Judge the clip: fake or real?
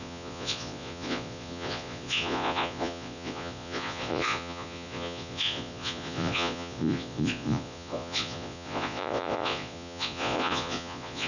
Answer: fake